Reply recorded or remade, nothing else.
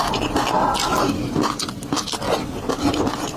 recorded